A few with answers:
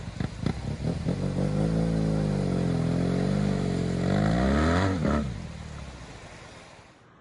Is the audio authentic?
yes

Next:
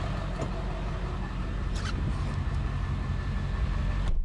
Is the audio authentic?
yes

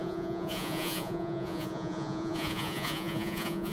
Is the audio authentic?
no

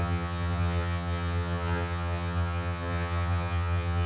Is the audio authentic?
no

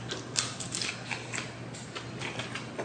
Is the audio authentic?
yes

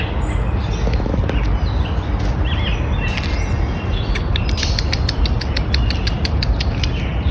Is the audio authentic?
yes